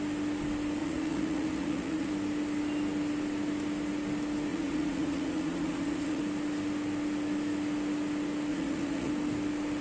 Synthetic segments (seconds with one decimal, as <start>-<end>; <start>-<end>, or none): 0.8-2.1; 4.5-6.2; 8.5-9.1